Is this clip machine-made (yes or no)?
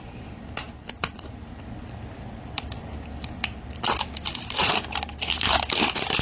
no